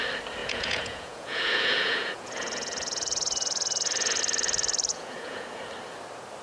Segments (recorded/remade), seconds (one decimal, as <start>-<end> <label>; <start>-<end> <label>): 0.0-0.4 recorded; 0.4-4.2 remade; 4.2-4.9 recorded; 4.9-5.6 remade; 5.6-6.4 recorded